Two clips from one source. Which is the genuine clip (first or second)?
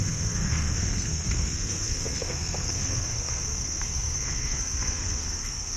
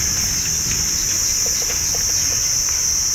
second